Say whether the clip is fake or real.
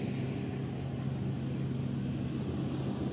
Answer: real